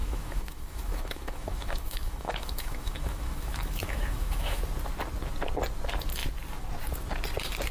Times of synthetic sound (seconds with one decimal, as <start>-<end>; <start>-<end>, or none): 0.0-4.6

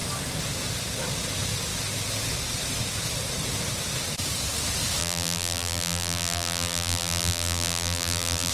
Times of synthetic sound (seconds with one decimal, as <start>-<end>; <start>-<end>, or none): 5.0-8.5

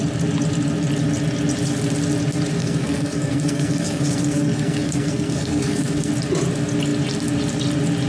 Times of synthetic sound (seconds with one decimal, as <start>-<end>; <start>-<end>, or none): 2.6-6.1

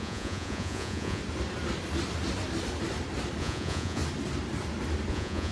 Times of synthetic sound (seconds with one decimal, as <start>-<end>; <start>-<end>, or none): 0.0-1.2; 3.4-4.0; 5.1-5.5

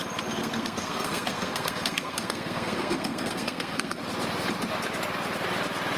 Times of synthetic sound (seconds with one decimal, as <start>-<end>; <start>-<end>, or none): 0.4-4.0

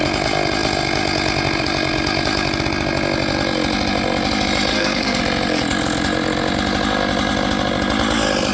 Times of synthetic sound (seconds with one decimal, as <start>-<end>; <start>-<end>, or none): 4.7-5.2